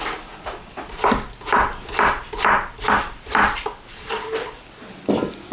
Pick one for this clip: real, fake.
real